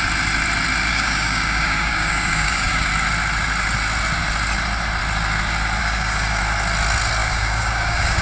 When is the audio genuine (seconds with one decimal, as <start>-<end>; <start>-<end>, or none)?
0.0-0.9; 2.9-5.8; 6.4-7.2